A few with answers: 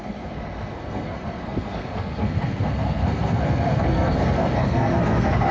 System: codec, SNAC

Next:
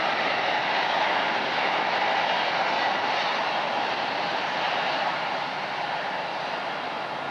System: none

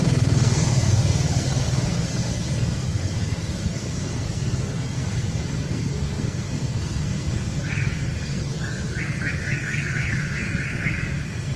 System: codec, SNAC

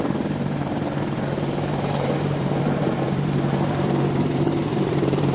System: vocoder, BigVGAN v2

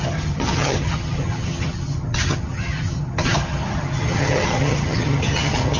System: vocoder, HiFi-GAN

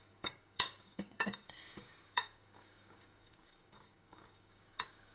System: codec, DAC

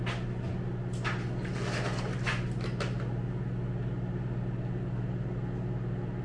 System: none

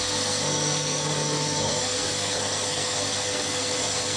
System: codec, SNAC